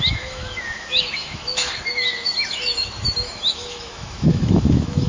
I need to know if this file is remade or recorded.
remade